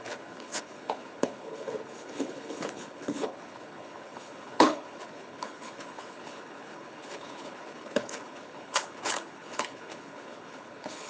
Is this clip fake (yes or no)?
yes